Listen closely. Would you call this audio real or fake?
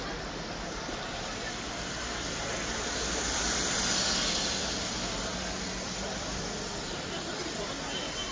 real